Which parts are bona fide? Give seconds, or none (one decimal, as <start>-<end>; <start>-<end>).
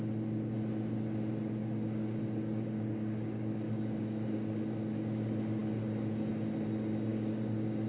0.0-1.6; 4.6-7.1